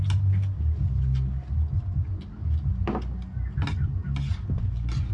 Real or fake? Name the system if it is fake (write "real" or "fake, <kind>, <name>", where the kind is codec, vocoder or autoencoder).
real